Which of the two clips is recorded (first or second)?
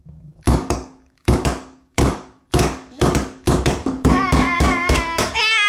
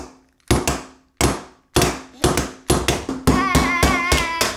second